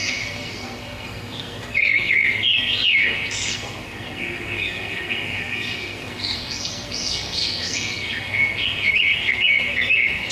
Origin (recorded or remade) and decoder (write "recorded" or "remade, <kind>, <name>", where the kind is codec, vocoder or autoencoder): remade, codec, SNAC